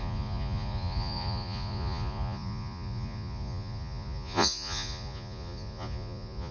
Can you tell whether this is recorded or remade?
remade